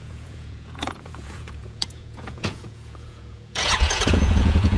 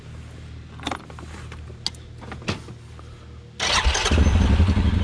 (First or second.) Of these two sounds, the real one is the second